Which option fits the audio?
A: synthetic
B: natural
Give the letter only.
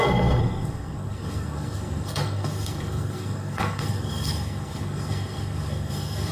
A